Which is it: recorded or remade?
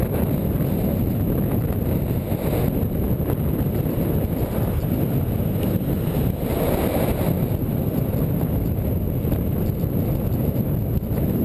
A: recorded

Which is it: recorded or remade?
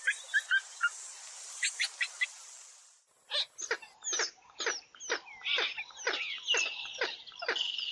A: recorded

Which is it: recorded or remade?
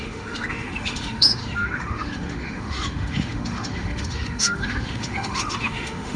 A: remade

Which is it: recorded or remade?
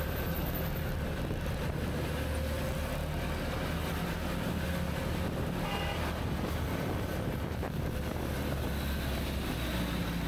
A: recorded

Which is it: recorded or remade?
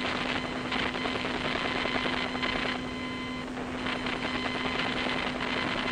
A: recorded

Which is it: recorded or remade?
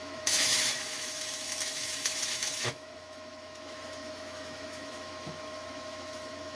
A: remade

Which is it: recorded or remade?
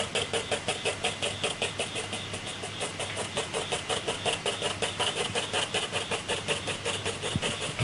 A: recorded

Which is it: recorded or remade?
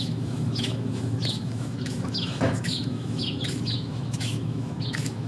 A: remade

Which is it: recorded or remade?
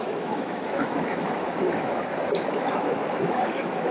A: remade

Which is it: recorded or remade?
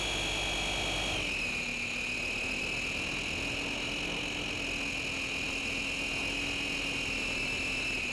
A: recorded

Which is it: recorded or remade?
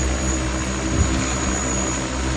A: recorded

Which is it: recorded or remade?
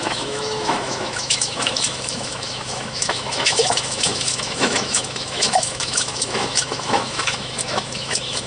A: remade